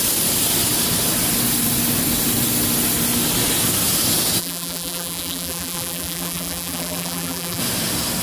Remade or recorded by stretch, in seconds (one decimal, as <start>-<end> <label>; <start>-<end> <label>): 0.0-4.4 recorded; 4.4-7.6 remade; 7.6-8.2 recorded